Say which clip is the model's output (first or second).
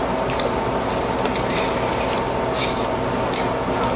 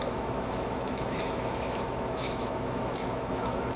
second